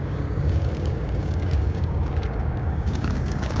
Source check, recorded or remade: remade